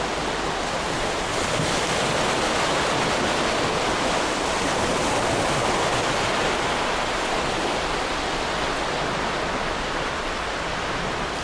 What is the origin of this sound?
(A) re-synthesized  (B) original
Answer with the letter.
B